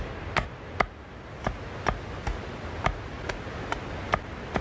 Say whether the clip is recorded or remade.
recorded